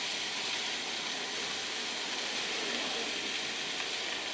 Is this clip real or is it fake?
real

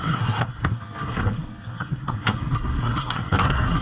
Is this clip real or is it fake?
fake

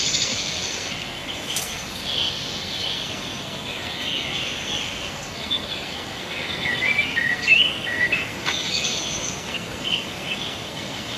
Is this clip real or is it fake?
fake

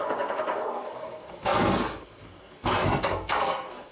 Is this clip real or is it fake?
fake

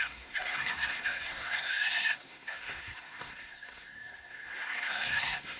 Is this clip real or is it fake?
fake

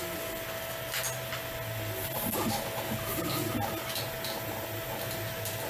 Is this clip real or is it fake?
real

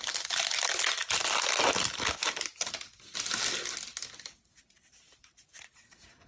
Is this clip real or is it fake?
real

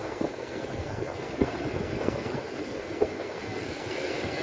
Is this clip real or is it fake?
fake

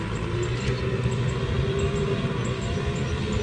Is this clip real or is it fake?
real